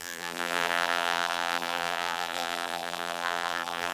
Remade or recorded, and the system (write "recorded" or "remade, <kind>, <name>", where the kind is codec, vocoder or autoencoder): remade, vocoder, BigVGAN v2